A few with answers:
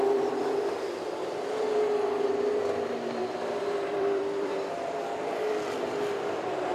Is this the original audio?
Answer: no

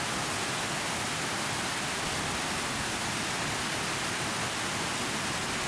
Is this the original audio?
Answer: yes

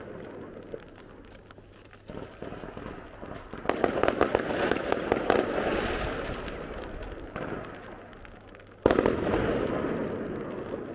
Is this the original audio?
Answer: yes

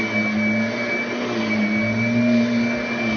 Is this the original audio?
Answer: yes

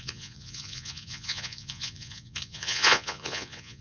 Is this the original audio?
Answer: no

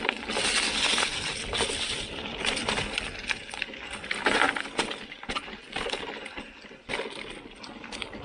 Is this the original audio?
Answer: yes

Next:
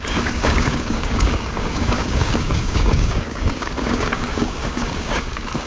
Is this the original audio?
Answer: no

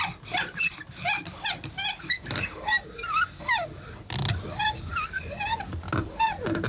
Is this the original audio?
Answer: yes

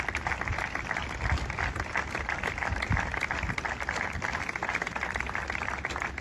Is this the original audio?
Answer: yes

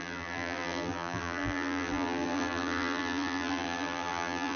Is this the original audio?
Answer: no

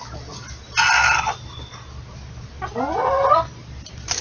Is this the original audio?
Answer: yes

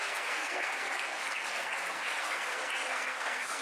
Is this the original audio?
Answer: no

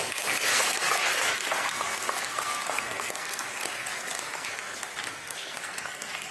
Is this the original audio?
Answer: no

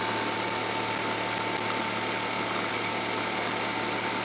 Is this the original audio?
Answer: yes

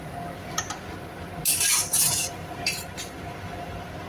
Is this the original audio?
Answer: yes